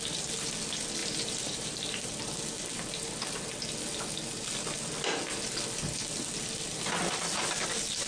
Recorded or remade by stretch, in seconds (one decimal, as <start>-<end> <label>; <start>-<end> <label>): 0.0-1.0 recorded; 1.0-2.1 remade; 2.1-8.1 recorded